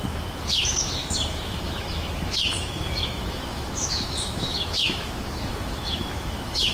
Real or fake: fake